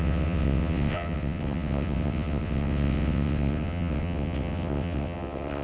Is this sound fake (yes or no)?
yes